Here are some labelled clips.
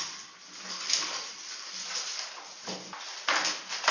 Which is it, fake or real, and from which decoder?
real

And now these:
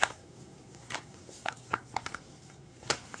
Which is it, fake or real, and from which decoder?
fake, codec, SNAC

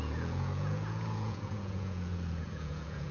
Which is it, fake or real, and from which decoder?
fake, vocoder, Vocos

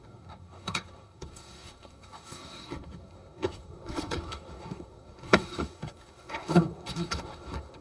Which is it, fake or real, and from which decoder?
fake, codec, SNAC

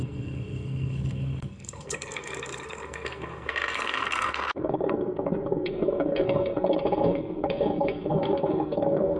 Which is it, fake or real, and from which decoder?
fake, codec, SNAC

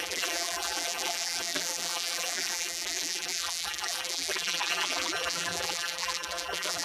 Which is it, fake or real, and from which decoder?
fake, vocoder, BigVGAN v2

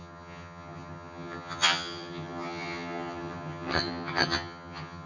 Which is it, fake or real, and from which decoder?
fake, vocoder, HiFi-GAN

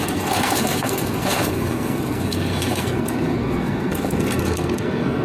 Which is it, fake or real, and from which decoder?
fake, codec, SNAC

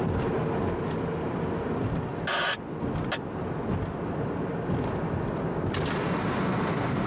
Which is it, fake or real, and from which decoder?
real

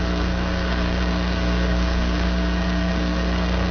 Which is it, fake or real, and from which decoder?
fake, codec, SNAC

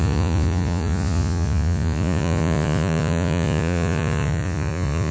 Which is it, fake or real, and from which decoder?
fake, vocoder, Vocos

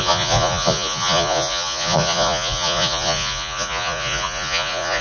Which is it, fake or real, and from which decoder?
fake, vocoder, Vocos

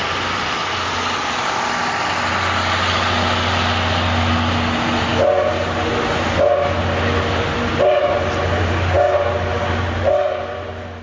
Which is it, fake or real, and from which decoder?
real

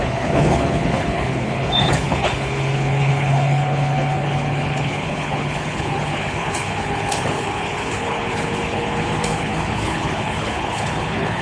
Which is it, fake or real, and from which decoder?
fake, codec, HILCodec